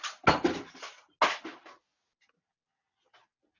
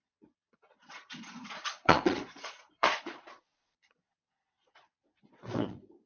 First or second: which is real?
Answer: first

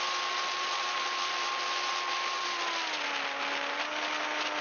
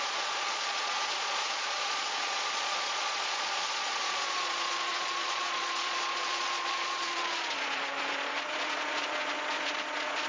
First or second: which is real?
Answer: first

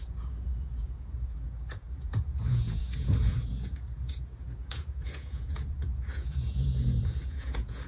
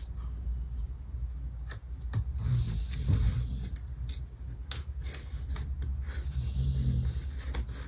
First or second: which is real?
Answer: second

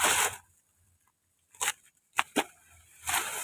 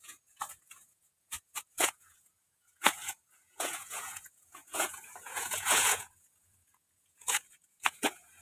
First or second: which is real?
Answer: first